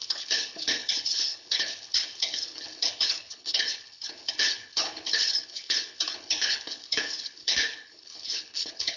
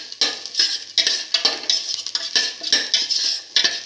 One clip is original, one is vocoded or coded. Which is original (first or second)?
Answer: second